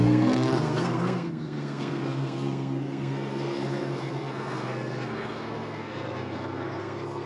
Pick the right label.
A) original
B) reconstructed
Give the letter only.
B